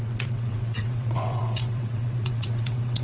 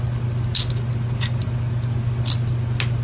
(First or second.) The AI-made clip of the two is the first